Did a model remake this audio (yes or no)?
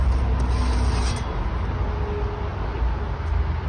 no